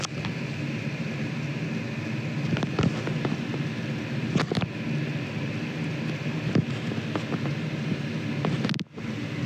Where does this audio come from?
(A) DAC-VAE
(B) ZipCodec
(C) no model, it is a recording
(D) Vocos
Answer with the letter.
C